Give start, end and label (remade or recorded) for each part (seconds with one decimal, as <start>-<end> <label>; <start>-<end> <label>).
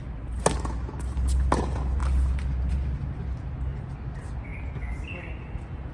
0.0-5.9 recorded